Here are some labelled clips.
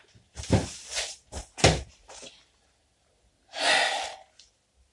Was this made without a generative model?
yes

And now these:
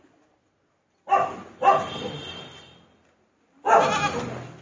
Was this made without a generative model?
yes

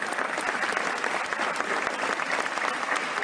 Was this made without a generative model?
yes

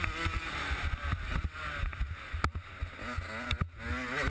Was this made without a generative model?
yes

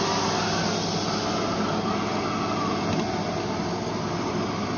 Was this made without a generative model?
yes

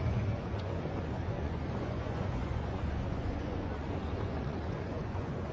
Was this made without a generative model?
no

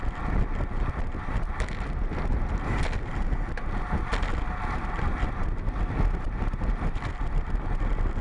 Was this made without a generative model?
yes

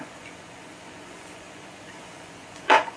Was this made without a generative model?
no